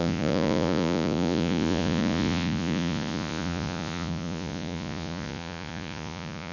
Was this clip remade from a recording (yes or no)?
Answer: yes